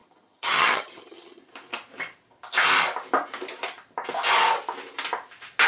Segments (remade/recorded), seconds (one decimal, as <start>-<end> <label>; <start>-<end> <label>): 0.0-1.4 remade; 1.4-5.7 recorded